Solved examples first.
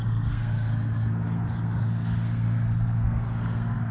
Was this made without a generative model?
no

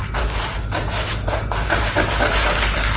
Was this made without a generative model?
yes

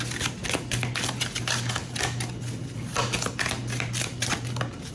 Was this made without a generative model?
yes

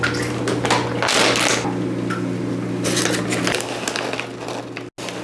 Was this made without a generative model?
yes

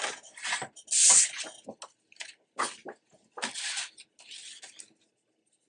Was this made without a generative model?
yes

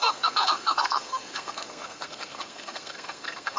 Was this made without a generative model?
no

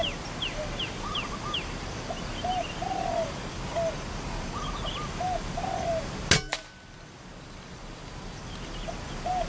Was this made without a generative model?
yes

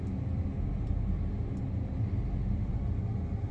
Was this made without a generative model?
yes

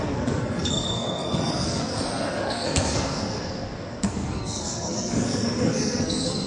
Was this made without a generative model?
no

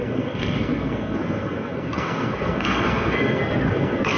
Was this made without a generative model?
no